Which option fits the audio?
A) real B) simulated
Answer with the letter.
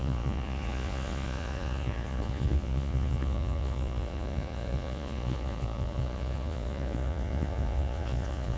B